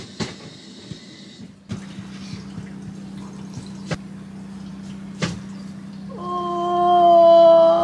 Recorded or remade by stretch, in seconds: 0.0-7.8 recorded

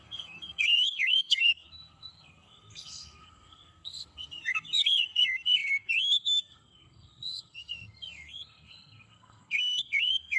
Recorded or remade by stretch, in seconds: 0.0-10.4 remade

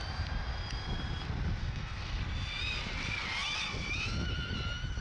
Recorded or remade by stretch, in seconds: 0.0-1.6 recorded; 1.6-2.2 remade; 2.2-5.0 recorded

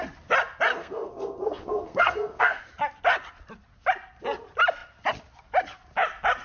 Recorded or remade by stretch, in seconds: 0.0-0.8 recorded; 0.8-2.7 remade; 2.7-6.4 recorded

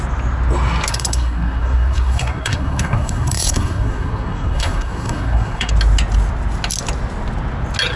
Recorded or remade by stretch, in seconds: 0.0-0.9 recorded; 0.9-5.7 remade; 5.7-8.0 recorded